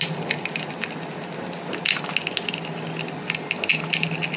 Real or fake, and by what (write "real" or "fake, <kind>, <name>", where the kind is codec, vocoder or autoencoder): real